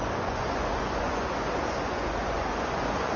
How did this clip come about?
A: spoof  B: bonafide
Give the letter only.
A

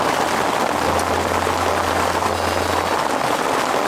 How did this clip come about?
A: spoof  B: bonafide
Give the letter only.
B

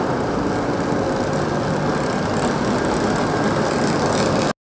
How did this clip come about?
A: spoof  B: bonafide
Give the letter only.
B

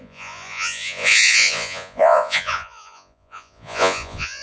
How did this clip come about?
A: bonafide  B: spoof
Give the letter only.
B